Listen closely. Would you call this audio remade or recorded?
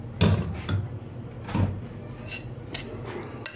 recorded